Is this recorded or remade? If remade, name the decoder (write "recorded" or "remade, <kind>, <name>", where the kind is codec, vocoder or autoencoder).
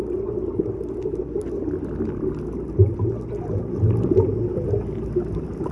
recorded